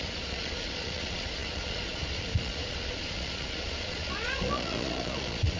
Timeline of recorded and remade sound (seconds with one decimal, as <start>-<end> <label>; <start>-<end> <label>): 0.0-5.6 remade